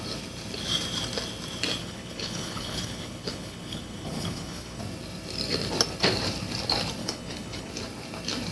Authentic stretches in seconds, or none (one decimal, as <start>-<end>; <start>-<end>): 0.0-1.8; 4.8-7.0; 7.7-8.5